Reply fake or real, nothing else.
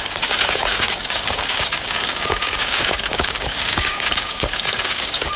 fake